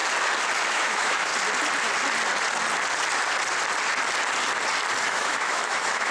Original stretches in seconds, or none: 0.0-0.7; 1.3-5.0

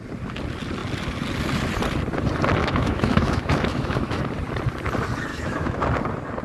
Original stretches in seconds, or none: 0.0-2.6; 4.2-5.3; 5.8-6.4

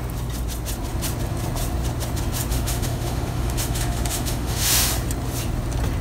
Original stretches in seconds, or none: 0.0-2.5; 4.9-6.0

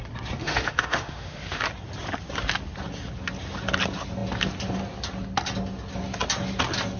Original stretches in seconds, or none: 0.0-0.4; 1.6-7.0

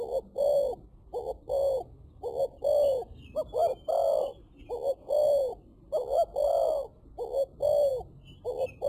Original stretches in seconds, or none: 0.0-8.9